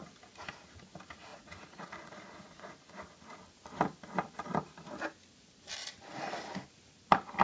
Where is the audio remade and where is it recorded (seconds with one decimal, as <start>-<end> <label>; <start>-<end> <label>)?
0.0-1.3 recorded; 1.3-3.0 remade; 3.0-7.4 recorded